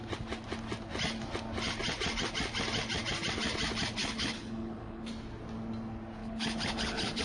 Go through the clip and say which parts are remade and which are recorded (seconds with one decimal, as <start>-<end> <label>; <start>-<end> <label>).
0.0-4.0 recorded; 4.0-5.1 remade; 5.1-6.2 recorded; 6.2-7.2 remade